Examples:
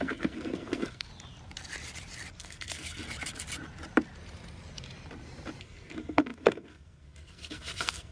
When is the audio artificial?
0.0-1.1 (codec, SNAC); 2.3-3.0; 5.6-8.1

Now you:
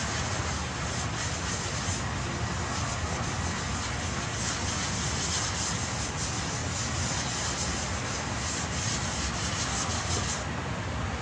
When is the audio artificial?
none